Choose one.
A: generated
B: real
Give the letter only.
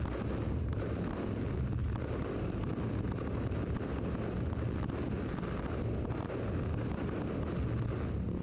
B